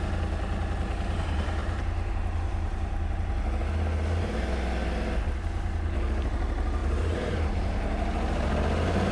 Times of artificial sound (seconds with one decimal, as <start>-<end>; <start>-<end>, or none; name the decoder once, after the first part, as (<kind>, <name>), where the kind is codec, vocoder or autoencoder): 1.6-3.1 (vocoder, BigVGAN v2); 6.8-7.5